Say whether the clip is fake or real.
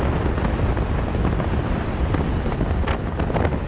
real